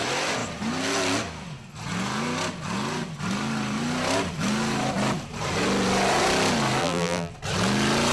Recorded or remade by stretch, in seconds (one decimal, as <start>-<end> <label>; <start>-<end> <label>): 0.0-6.8 recorded; 6.8-7.3 remade; 7.3-8.1 recorded